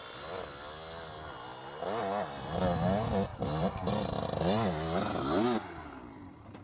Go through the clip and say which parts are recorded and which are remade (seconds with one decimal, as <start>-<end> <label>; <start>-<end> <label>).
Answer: 0.0-1.5 recorded; 1.5-2.0 remade; 2.0-3.3 recorded; 3.3-3.9 remade; 3.9-6.6 recorded